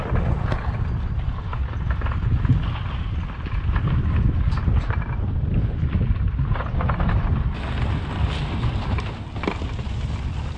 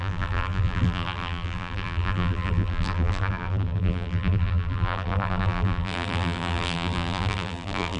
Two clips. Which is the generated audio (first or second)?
second